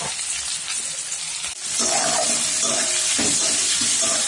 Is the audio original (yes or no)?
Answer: yes